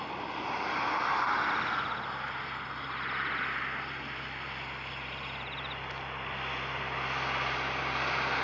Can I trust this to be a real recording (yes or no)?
yes